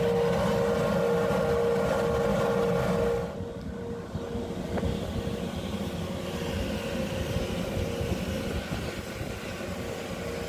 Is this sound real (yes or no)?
yes